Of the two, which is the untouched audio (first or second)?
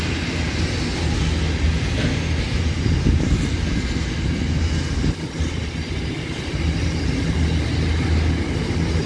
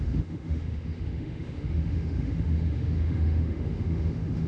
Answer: first